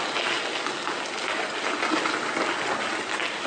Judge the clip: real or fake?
real